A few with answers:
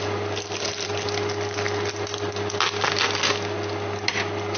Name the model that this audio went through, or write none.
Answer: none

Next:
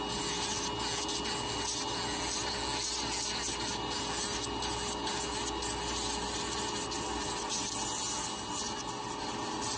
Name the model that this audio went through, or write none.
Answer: none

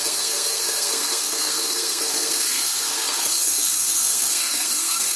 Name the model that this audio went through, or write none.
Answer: codec, SNAC